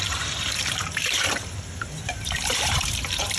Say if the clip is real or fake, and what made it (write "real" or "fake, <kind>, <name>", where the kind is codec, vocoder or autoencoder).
fake, vocoder, BigVGAN v2